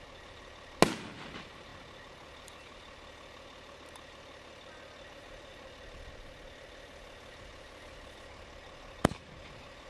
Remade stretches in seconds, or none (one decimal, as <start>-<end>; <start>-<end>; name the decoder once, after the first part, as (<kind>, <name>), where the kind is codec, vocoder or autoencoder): none